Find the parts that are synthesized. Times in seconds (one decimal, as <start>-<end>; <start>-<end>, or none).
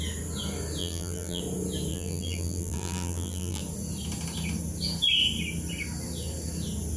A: 0.8-1.4; 1.9-3.6